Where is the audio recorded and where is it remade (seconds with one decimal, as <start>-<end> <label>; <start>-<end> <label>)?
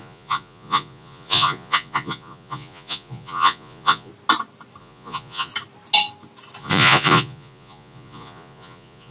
0.0-4.1 remade; 4.1-4.8 recorded; 4.8-5.5 remade; 5.5-6.6 recorded; 6.6-9.1 remade